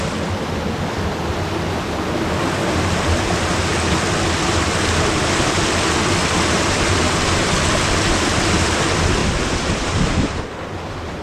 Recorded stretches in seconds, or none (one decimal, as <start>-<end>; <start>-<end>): 0.0-9.2; 10.4-11.2